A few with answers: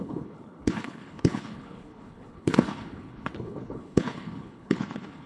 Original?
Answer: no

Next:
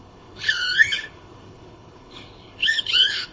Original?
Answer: no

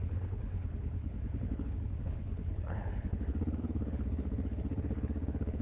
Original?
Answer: no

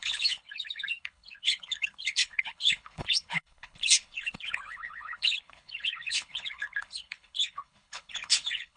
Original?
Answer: no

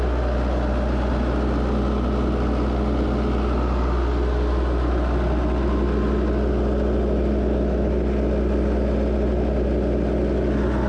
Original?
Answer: yes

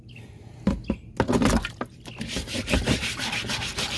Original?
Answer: yes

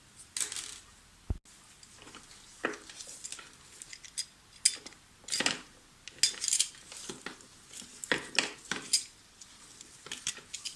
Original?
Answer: yes